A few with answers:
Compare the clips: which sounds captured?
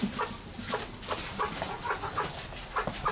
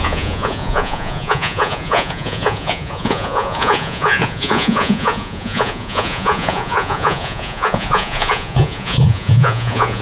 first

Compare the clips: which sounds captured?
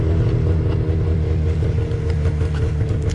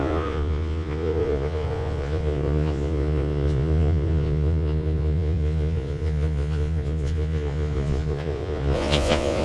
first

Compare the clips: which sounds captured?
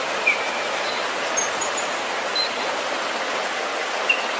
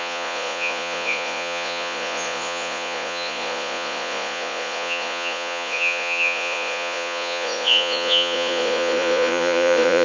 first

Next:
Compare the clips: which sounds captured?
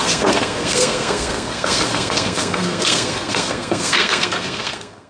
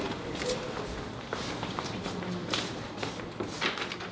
second